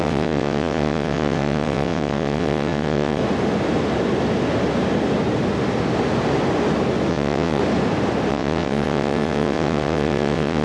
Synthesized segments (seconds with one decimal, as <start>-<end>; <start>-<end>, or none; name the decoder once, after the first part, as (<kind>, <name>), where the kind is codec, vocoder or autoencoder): 0.0-3.2 (vocoder, WaveNeXt); 7.1-7.6; 8.3-10.6